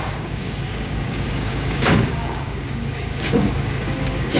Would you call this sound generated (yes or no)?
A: yes